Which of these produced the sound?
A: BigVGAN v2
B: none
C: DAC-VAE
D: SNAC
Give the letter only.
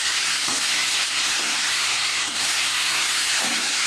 D